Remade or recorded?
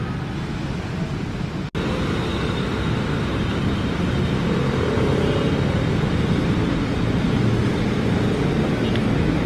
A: recorded